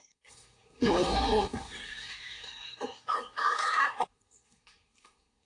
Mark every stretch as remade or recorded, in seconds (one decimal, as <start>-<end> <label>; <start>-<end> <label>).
0.0-5.5 remade